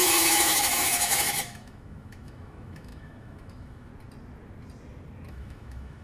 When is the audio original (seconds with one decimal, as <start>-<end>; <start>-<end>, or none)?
3.9-5.3